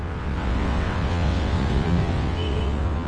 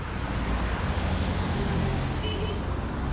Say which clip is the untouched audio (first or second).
second